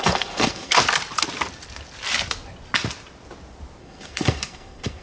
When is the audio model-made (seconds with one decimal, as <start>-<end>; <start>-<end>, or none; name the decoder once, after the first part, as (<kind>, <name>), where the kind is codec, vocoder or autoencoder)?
0.0-0.8 (codec, SNAC); 3.8-5.0